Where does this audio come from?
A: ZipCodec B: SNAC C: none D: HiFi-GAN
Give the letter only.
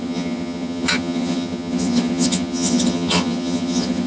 D